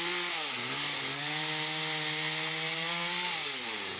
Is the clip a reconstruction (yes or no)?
no